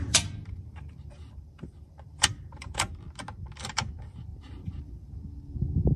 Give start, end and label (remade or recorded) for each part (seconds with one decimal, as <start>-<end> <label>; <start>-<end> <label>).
0.0-2.9 remade; 2.9-4.3 recorded; 4.3-5.1 remade; 5.1-6.0 recorded